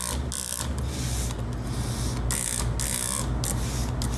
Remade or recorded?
recorded